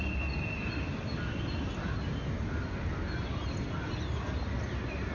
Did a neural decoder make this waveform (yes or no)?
no